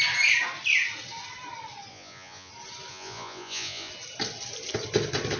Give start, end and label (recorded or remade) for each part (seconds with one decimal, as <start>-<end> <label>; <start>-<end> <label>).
0.0-1.9 recorded; 1.9-2.5 remade; 2.5-2.9 recorded; 2.9-3.9 remade; 3.9-5.4 recorded